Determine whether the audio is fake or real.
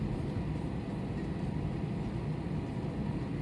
real